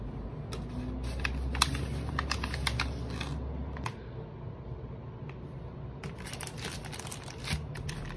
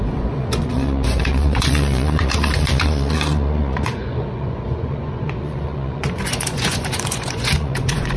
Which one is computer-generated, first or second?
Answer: second